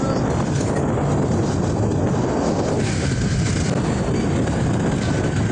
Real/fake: real